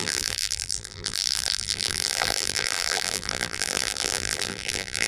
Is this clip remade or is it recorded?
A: remade